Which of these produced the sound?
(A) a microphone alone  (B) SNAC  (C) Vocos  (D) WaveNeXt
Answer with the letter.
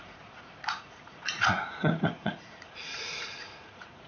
C